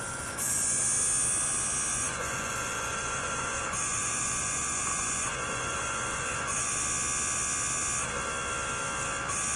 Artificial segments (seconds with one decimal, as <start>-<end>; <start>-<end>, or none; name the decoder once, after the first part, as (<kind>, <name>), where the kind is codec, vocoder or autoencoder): 0.0-0.8 (vocoder, Vocos); 1.9-6.7